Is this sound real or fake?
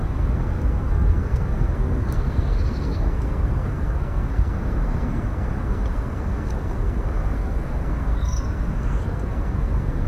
fake